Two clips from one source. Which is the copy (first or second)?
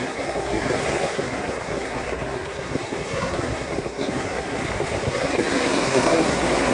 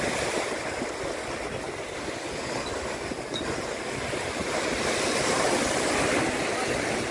first